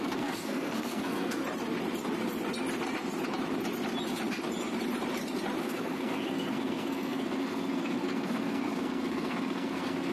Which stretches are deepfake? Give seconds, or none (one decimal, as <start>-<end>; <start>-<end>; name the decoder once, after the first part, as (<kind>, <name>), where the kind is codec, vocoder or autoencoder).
0.0-1.4 (codec, SNAC); 5.6-10.1